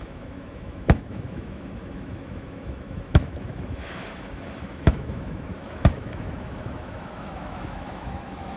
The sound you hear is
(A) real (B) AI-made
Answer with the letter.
B